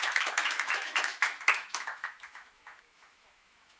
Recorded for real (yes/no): no